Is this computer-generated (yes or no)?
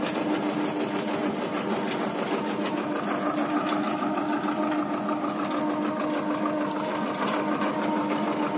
no